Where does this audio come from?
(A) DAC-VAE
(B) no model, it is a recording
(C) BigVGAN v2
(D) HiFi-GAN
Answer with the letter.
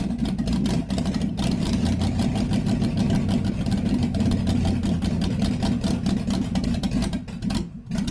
B